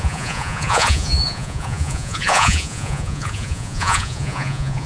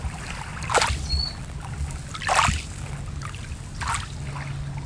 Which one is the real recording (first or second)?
second